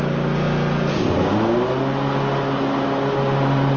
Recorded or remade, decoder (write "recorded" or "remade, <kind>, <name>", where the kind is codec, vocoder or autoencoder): recorded